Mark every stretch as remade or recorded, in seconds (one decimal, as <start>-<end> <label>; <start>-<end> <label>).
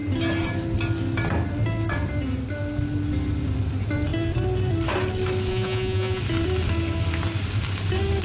0.0-5.5 recorded; 5.5-6.2 remade; 6.2-8.2 recorded